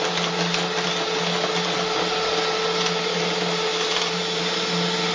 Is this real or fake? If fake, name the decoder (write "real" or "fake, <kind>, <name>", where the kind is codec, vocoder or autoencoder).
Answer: real